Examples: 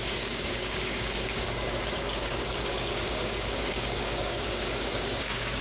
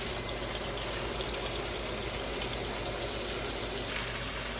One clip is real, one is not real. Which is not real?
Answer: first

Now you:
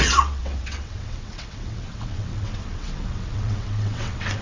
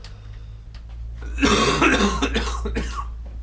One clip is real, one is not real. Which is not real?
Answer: first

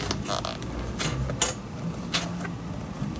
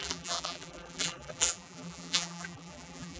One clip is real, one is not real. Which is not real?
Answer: second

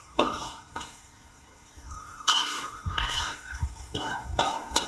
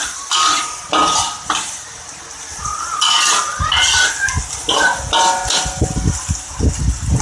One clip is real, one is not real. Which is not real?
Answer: first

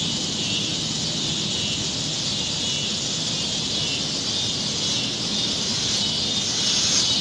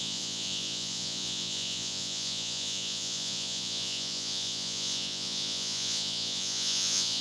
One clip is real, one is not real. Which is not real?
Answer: second